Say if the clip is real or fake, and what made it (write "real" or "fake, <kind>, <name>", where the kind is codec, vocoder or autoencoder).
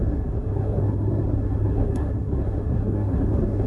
fake, codec, SNAC